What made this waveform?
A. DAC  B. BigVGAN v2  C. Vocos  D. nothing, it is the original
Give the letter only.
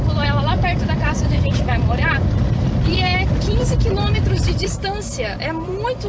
B